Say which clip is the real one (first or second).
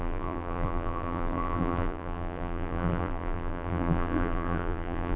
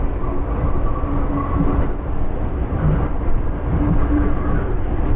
second